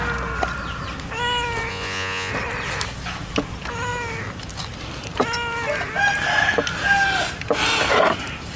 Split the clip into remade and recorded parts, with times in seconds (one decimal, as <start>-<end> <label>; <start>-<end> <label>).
0.0-1.7 recorded; 1.7-2.3 remade; 2.3-8.6 recorded